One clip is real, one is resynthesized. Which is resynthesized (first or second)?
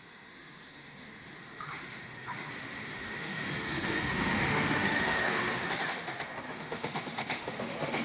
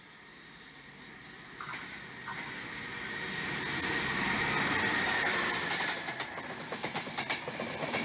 first